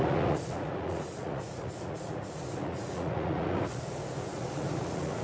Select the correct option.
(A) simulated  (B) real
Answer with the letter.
A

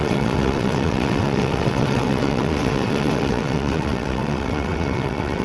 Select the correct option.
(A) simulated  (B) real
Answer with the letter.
A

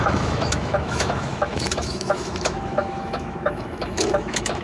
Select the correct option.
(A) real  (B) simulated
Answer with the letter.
B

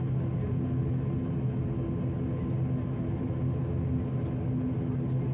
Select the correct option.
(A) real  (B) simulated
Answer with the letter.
A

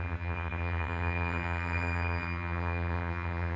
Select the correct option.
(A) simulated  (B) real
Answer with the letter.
A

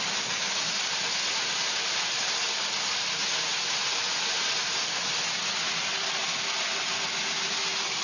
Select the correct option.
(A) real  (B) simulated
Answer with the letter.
A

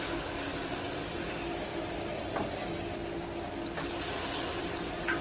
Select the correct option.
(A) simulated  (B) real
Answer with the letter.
B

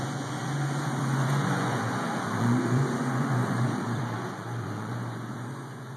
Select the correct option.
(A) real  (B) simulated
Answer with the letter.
B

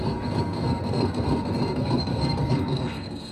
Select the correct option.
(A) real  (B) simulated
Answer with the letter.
B